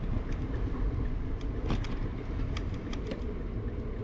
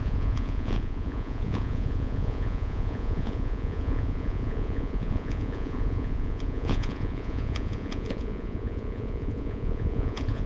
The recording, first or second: first